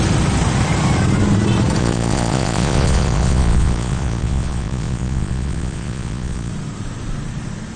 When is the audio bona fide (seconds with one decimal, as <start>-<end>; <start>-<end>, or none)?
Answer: 0.0-1.8; 6.5-7.8